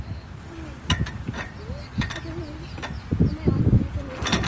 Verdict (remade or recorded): recorded